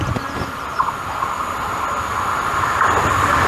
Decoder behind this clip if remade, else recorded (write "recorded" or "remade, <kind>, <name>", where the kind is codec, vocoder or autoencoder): recorded